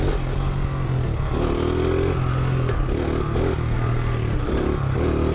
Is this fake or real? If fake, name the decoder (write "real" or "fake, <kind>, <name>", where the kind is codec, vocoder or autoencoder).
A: real